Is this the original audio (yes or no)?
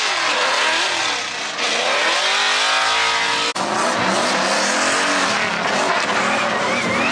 yes